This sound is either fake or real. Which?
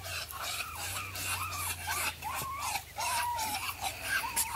fake